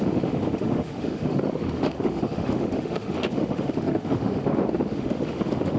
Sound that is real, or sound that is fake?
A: fake